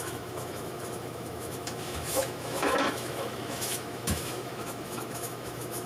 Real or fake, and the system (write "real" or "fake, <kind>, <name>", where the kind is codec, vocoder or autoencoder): fake, autoencoder, DAC-VAE